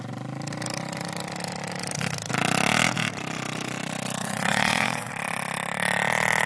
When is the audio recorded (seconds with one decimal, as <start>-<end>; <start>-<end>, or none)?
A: 0.0-4.2; 5.1-6.5